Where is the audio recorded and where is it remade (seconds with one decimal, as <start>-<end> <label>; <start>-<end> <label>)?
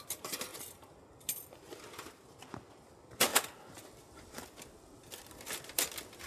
0.0-6.3 recorded